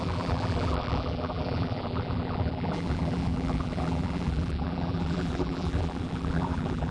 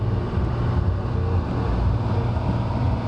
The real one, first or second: second